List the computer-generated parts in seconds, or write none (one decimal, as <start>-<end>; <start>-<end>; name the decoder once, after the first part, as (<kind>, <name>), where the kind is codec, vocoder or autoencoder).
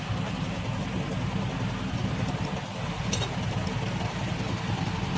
none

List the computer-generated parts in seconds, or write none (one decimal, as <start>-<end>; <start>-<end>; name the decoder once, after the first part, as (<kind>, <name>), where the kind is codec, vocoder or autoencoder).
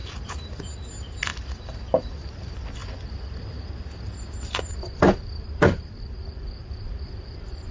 2.8-7.7 (vocoder, BigVGAN v2)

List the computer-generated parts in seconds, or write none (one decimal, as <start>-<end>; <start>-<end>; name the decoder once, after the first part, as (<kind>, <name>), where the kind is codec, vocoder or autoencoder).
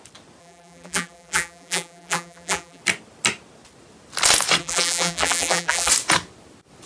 0.4-2.8 (vocoder, BigVGAN v2); 4.6-5.9